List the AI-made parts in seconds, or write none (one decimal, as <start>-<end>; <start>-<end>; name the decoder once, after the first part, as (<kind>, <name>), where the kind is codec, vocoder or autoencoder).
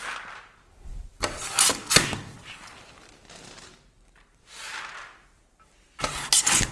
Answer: none